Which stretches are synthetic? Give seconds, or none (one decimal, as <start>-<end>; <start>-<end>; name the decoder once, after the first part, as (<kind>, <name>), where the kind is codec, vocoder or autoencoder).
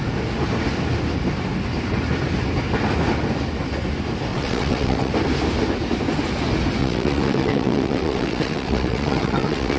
4.3-5.1 (vocoder, WaveNeXt); 6.8-9.8